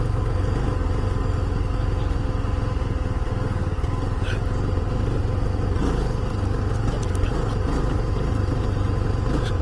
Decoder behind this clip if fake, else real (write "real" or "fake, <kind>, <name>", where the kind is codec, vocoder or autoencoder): real